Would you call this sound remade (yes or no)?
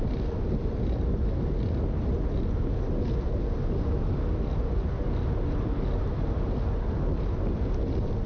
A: no